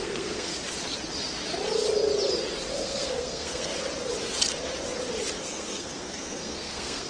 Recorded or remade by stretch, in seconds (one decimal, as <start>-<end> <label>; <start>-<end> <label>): 0.0-0.5 remade; 0.5-2.7 recorded; 2.7-3.7 remade; 3.7-5.4 recorded; 5.4-7.1 remade